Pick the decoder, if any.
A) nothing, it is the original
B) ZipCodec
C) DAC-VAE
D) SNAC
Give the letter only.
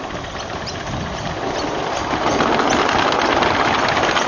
A